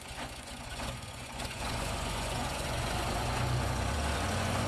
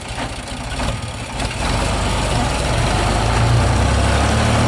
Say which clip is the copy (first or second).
first